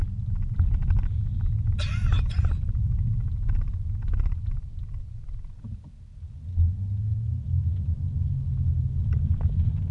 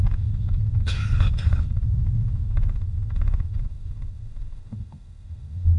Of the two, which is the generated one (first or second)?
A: second